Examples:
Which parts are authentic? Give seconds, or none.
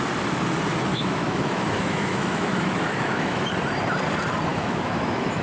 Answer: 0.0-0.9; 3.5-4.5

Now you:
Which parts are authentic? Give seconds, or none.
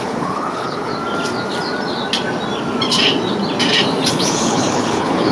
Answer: 0.9-4.1